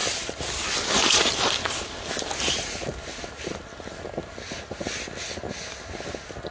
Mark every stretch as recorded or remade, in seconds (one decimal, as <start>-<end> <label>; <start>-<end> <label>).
0.0-6.5 recorded

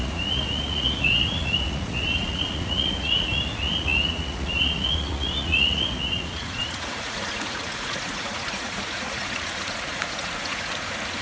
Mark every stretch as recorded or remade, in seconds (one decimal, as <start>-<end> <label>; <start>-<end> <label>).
0.0-11.2 remade

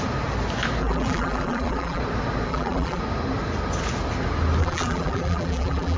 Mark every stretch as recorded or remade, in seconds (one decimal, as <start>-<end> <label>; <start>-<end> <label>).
0.0-0.8 recorded; 0.8-2.0 remade; 2.0-2.5 recorded; 2.5-3.0 remade; 3.0-4.6 recorded; 4.6-6.0 remade

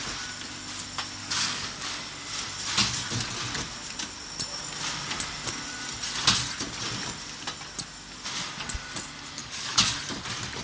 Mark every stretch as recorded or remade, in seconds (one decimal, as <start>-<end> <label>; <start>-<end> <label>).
0.0-1.2 recorded; 1.2-2.0 remade; 2.0-9.4 recorded; 9.4-10.0 remade; 10.0-10.6 recorded

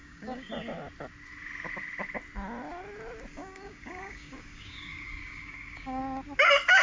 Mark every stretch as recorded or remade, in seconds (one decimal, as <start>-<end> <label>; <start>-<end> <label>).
0.0-0.5 remade; 0.5-3.3 recorded; 3.3-6.0 remade; 6.0-6.8 recorded

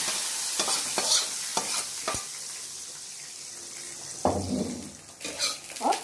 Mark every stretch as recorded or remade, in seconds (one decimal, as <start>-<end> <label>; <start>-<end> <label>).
0.0-6.0 recorded

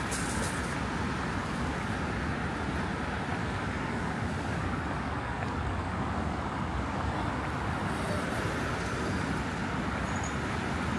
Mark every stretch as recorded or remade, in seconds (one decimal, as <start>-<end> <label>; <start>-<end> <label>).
0.0-1.4 recorded; 1.4-1.9 remade; 1.9-3.4 recorded; 3.4-7.1 remade; 7.1-11.0 recorded

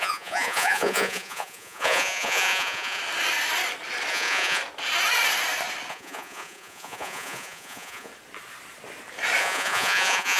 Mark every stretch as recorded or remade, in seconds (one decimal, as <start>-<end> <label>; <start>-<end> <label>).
0.0-3.0 remade; 3.0-4.1 recorded; 4.1-4.6 remade; 4.6-5.9 recorded; 5.9-8.1 remade; 8.1-9.4 recorded; 9.4-10.4 remade